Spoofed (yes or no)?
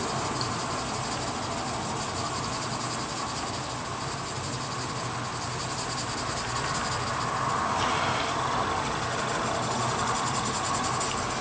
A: no